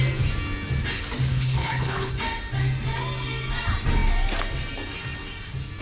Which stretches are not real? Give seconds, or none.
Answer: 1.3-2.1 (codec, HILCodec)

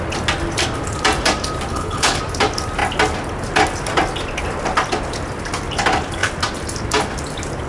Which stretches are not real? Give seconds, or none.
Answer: 1.7-2.2 (codec, HILCodec)

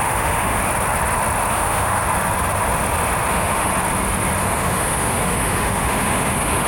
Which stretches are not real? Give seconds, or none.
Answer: 0.0-0.6 (autoencoder, DAC-VAE); 1.5-2.0; 3.3-3.7; 4.4-6.7

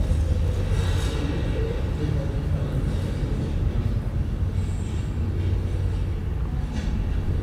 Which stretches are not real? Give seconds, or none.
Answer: none